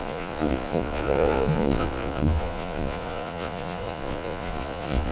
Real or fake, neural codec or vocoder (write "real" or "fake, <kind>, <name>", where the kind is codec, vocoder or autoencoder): fake, vocoder, Vocos